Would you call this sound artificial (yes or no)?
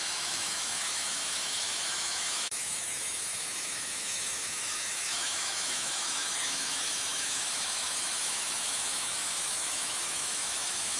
yes